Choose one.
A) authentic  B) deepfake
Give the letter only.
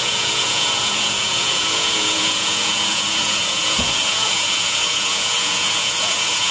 B